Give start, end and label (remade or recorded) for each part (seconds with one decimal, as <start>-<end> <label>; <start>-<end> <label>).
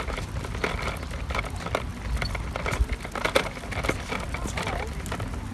0.0-5.5 recorded